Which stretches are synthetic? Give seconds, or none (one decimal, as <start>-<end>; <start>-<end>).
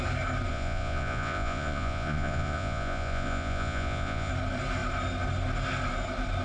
0.5-4.3